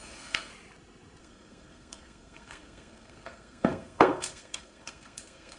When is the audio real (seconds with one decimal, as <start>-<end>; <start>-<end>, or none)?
0.5-1.2